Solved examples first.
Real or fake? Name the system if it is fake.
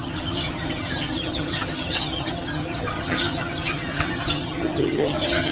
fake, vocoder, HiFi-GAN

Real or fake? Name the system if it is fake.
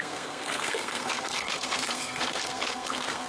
fake, codec, SNAC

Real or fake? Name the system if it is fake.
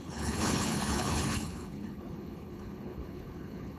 fake, codec, HILCodec